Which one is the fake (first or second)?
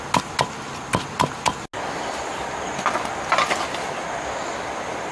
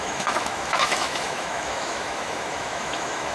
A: second